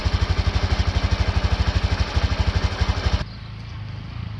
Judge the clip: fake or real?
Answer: real